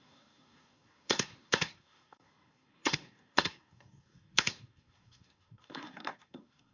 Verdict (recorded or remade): remade